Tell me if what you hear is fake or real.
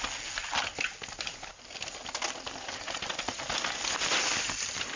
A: real